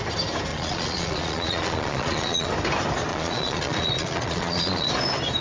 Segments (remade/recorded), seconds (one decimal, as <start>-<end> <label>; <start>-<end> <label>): 0.0-0.5 recorded; 0.5-2.5 remade; 2.5-3.1 recorded; 3.1-4.9 remade; 4.9-5.4 recorded